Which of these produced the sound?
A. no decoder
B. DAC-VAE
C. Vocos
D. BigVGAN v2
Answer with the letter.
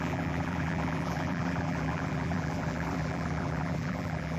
D